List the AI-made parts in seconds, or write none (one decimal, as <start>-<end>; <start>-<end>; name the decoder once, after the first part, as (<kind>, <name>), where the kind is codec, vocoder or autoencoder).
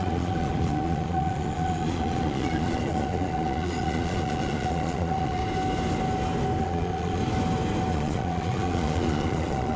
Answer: 0.0-5.4 (vocoder, Vocos); 6.6-7.2; 7.9-9.8